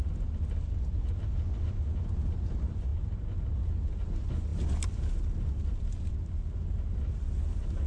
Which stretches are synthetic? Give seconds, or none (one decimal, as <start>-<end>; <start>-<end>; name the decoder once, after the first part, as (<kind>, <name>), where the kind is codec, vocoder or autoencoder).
none